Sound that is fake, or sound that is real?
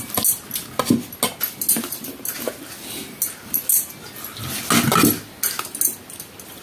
real